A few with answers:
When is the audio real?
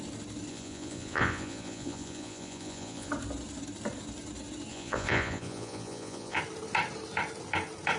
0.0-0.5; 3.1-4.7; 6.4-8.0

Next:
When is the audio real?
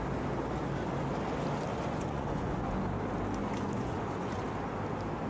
0.0-1.7; 2.8-3.4; 4.4-5.3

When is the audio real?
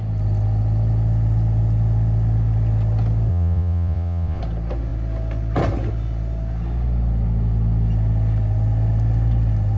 0.0-3.3; 4.4-9.8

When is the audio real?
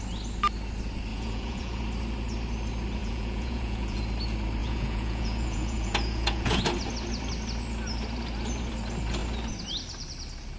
0.0-1.1; 1.8-3.0; 4.0-4.6; 6.6-10.6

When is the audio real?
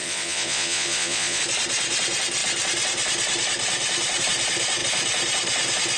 1.4-6.0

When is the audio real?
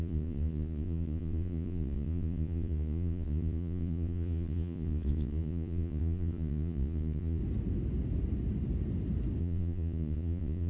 7.4-9.4